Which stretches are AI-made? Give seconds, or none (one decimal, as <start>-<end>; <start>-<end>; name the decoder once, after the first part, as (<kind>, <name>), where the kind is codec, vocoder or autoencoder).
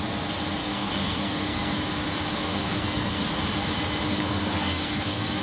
0.6-1.8 (codec, SNAC); 2.3-3.2; 4.1-5.4